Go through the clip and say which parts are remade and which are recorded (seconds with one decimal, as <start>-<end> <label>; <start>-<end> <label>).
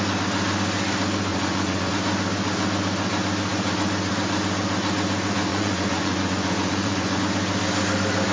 0.0-1.3 recorded; 1.3-1.9 remade; 1.9-5.5 recorded; 5.5-7.2 remade; 7.2-8.3 recorded